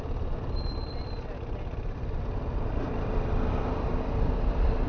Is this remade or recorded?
recorded